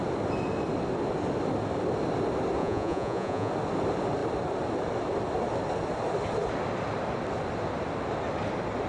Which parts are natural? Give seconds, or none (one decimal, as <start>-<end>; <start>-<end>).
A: 0.0-2.6; 3.5-8.9